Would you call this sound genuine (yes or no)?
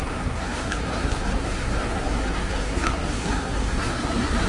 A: no